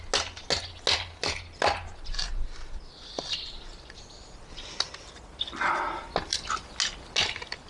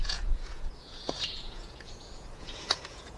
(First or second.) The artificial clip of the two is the second